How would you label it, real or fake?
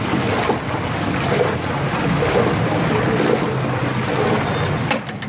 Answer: real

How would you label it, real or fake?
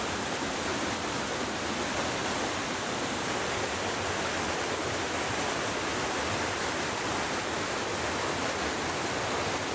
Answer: real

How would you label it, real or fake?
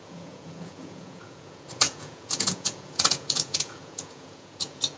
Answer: fake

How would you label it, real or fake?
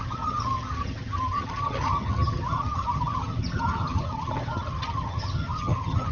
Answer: fake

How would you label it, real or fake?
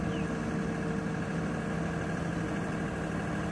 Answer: real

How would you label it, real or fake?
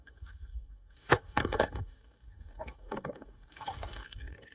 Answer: fake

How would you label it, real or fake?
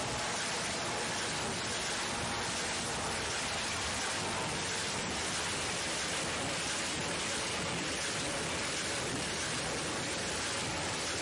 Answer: real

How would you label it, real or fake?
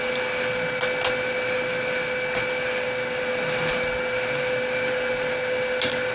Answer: real